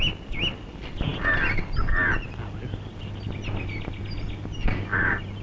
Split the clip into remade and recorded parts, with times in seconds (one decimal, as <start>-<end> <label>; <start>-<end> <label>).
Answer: 0.0-5.4 recorded